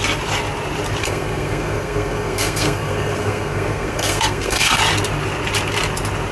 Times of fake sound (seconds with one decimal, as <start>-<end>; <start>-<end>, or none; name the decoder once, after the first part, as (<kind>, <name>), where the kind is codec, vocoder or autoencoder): 1.0-4.8 (codec, SNAC)